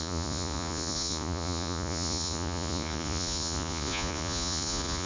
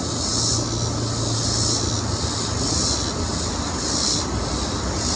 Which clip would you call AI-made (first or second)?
first